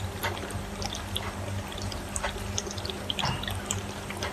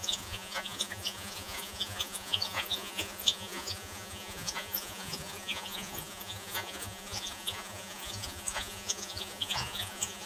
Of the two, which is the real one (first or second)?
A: first